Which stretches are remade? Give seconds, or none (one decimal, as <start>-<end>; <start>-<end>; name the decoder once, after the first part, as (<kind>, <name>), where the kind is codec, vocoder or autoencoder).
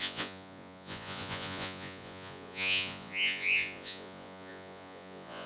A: 0.0-5.5 (vocoder, Vocos)